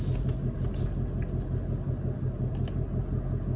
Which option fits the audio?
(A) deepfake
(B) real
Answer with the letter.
B